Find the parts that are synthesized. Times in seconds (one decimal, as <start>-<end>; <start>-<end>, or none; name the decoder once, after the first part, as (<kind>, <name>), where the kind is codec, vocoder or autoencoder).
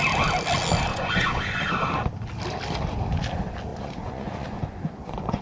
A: 0.9-1.7 (vocoder, Vocos); 3.7-5.4